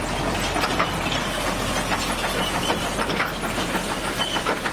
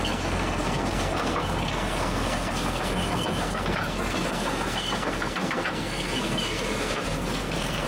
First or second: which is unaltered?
first